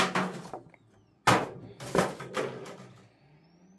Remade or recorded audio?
recorded